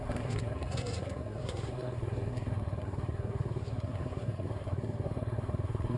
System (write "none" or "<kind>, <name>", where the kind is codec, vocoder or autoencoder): codec, SNAC